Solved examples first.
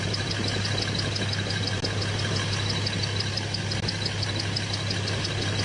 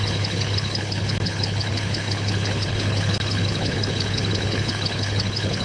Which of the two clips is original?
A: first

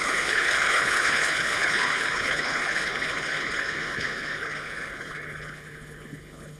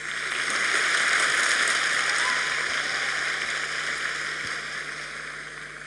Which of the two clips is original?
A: second